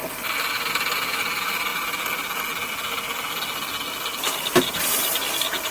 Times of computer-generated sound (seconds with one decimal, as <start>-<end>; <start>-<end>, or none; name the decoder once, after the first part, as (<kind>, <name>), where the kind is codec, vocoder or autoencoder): none